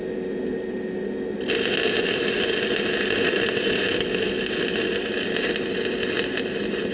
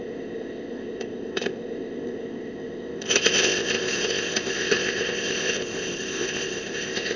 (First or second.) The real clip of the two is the first